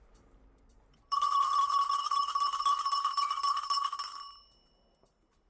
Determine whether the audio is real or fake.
fake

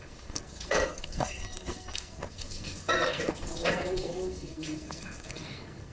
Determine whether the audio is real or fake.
fake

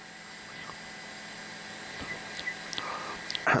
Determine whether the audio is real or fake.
real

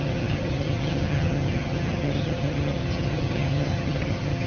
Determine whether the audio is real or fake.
fake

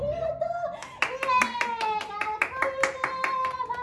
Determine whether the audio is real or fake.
real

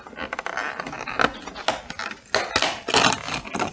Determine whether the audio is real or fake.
real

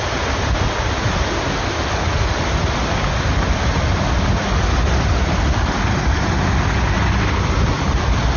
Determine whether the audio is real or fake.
real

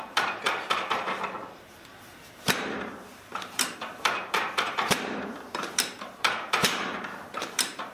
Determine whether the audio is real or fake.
fake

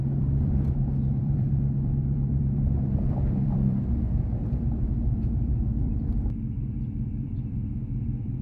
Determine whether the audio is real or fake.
fake